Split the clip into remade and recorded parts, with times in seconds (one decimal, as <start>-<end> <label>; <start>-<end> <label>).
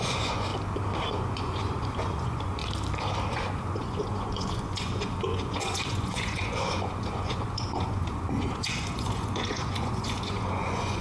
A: 0.0-0.5 remade; 0.5-1.1 recorded; 1.1-2.6 remade; 2.6-3.3 recorded; 3.3-11.0 remade